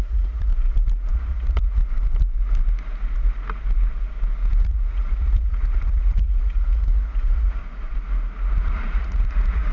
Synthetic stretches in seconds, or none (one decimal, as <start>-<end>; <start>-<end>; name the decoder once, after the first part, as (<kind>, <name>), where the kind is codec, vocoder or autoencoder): 0.0-0.5 (vocoder, Vocos); 1.1-1.8; 4.5-7.6; 8.6-9.7